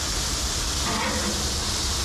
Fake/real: real